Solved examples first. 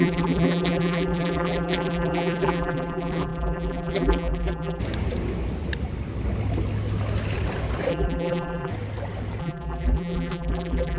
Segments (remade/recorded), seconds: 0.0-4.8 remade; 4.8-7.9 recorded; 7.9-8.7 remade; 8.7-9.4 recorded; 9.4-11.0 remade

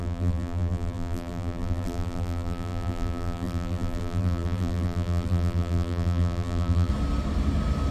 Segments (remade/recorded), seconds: 0.0-6.9 remade; 6.9-7.9 recorded